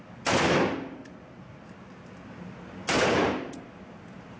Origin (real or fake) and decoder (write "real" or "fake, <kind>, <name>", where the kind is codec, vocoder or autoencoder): real